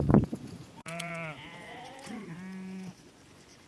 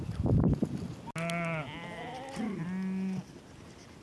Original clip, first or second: second